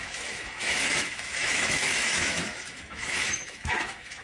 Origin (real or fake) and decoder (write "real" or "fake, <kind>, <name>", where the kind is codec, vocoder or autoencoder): fake, autoencoder, DAC-VAE